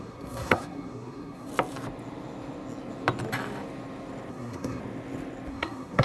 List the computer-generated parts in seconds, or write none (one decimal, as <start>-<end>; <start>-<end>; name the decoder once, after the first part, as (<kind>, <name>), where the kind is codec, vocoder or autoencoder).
0.0-1.5 (codec, SNAC); 4.3-4.8; 5.5-6.0